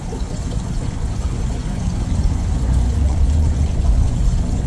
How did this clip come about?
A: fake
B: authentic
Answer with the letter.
A